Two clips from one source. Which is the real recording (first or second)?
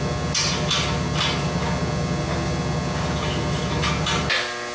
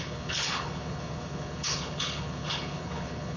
first